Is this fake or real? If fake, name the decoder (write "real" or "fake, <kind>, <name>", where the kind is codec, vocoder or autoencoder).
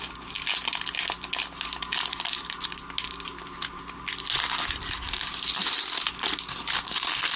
real